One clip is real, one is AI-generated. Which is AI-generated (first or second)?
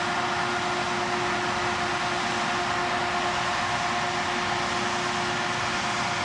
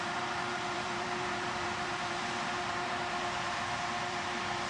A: second